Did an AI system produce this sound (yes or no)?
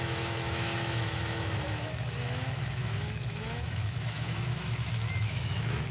yes